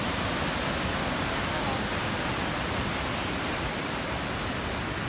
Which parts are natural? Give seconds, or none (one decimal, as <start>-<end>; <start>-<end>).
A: 0.0-0.6; 1.2-5.1